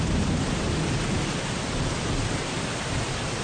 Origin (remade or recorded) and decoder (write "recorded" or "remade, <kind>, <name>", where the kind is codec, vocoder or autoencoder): recorded